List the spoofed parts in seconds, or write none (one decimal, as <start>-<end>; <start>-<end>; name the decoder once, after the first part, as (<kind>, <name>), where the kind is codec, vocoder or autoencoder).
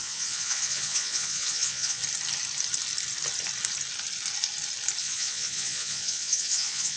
0.0-2.0 (vocoder, Vocos); 5.0-7.0